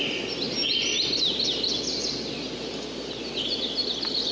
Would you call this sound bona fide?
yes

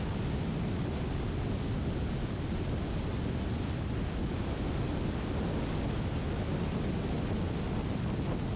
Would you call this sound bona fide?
yes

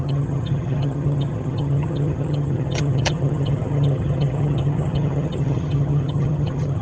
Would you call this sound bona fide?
no